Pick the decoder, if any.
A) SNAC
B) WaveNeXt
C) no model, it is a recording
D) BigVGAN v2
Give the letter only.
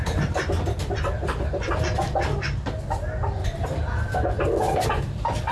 C